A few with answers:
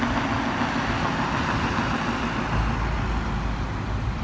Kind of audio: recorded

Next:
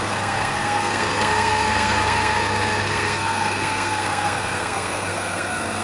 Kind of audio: remade